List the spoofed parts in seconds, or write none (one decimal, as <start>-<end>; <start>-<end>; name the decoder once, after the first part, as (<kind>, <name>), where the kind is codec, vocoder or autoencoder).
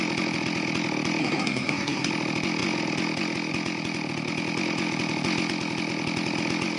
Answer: 1.2-2.1 (codec, SNAC)